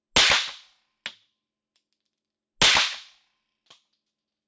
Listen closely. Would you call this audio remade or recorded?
recorded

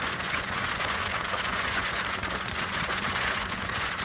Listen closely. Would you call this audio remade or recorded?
remade